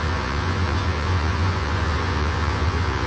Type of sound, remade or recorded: remade